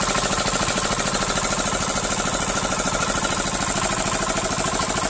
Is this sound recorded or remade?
recorded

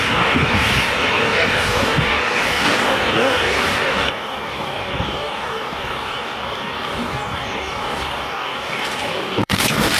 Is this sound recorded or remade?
remade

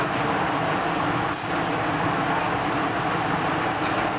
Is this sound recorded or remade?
remade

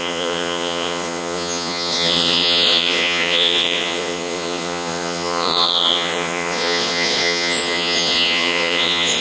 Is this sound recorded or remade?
remade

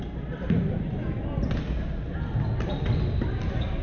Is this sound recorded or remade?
recorded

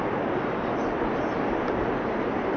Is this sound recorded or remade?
recorded